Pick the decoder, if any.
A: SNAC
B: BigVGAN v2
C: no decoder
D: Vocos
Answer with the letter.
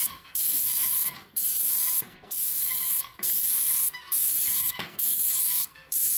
A